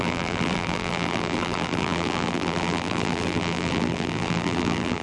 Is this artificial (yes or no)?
yes